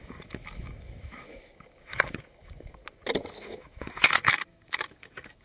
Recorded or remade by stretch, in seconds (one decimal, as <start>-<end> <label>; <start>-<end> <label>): 0.0-2.8 remade; 2.8-3.4 recorded; 3.4-5.4 remade